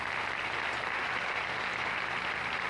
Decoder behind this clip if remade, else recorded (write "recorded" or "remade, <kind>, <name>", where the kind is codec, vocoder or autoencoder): recorded